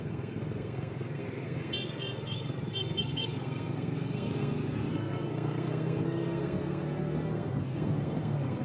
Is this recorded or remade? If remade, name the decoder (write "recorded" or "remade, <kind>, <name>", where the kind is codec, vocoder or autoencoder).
remade, codec, SNAC